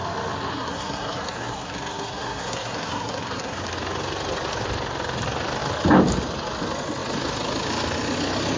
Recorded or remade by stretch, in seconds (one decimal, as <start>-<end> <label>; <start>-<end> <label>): 0.0-0.5 recorded; 0.5-3.6 remade; 3.6-8.6 recorded